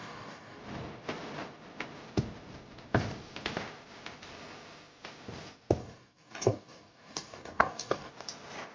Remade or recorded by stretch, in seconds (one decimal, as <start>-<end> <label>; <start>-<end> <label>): 0.0-0.6 remade; 0.6-5.8 recorded; 5.8-8.1 remade; 8.1-8.7 recorded